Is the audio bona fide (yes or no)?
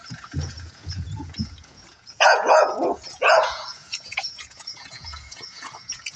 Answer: no